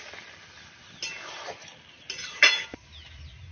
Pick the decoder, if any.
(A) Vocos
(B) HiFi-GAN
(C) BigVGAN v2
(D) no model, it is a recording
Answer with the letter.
D